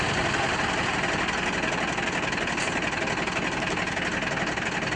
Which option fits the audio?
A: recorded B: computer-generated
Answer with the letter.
A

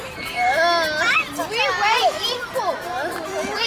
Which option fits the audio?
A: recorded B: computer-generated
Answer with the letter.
A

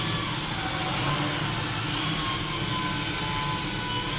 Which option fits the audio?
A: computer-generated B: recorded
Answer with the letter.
B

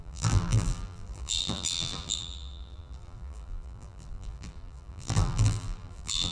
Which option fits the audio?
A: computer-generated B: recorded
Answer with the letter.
A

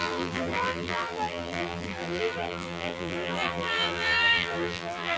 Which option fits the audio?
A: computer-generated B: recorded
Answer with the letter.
A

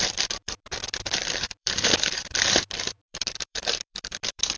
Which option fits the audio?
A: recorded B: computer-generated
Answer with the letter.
B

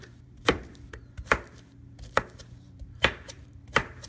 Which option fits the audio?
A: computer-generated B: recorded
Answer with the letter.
A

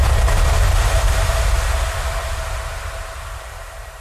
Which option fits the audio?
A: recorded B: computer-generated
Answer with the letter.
B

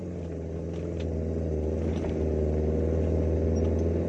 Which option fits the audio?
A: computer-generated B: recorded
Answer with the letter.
B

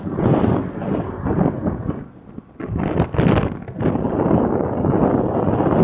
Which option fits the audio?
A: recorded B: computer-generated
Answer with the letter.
A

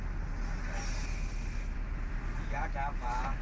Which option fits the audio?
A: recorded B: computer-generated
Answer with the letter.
A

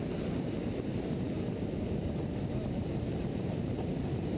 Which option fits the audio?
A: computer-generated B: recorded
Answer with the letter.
A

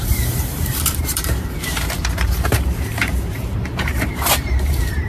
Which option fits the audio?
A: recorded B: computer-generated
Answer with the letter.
B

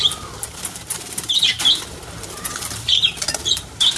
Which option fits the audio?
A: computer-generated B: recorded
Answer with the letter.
A